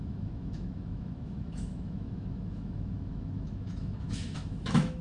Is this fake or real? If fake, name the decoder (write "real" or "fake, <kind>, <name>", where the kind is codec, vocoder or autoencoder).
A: fake, autoencoder, DAC-VAE